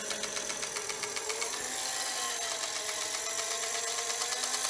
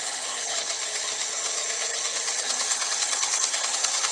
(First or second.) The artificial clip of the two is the second